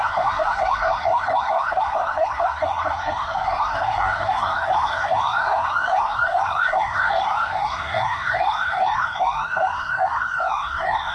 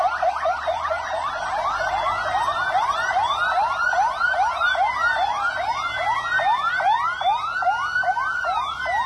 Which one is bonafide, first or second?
second